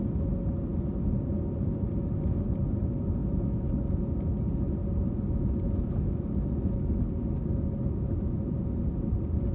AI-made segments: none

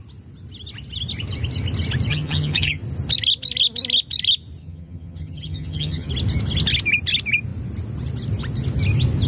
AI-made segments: 2.1-2.8 (vocoder, HiFi-GAN); 4.6-6.1

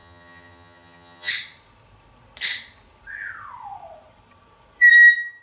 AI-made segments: 0.0-1.3 (vocoder, HiFi-GAN)

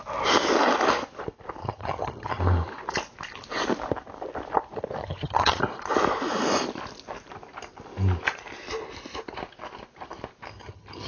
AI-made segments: 1.6-2.4 (vocoder, HiFi-GAN); 5.0-5.6; 10.5-11.1

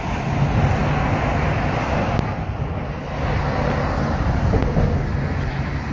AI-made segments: none